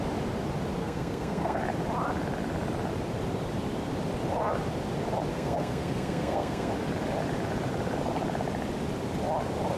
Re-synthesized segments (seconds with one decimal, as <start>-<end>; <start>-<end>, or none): 0.8-1.6; 5.3-6.7